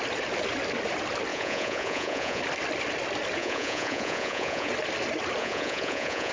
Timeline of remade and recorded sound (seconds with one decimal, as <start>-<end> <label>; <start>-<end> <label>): 0.0-1.3 recorded; 1.3-2.4 remade; 2.4-3.4 recorded; 3.4-4.7 remade; 4.7-5.4 recorded; 5.4-6.3 remade